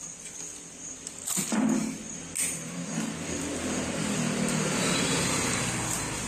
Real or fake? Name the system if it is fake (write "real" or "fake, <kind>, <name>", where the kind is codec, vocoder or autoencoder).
real